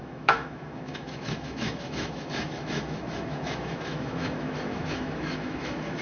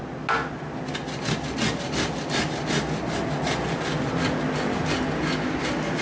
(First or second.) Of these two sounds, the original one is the second